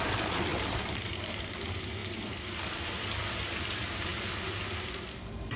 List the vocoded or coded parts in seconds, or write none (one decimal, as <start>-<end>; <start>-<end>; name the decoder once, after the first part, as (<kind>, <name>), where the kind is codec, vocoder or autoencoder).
0.0-4.1 (vocoder, BigVGAN v2); 5.0-5.6